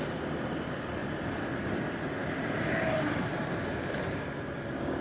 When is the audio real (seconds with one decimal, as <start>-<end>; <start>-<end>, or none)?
0.0-5.0

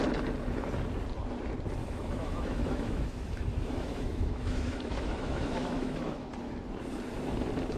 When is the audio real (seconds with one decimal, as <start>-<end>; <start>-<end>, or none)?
0.0-1.8; 6.3-7.8

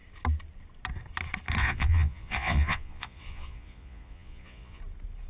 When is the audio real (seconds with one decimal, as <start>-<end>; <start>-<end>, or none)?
0.0-1.6; 4.8-5.3

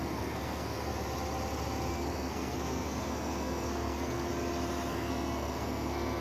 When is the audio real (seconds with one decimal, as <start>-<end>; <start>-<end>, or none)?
0.9-1.9; 4.3-4.9

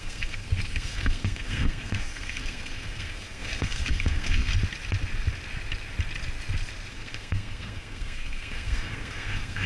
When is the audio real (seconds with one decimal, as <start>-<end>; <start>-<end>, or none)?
4.5-6.9